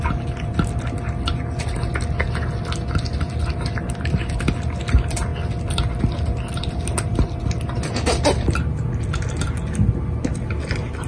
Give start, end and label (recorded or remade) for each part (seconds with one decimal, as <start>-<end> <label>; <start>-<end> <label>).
0.0-11.1 recorded